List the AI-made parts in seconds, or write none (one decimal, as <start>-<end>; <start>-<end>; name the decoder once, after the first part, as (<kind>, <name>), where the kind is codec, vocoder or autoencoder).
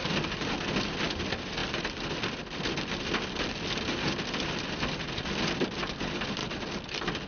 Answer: none